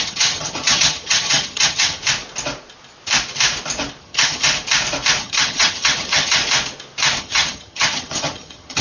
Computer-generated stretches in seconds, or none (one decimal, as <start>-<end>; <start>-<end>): 0.0-2.0; 4.0-4.5; 5.2-6.4; 7.2-8.8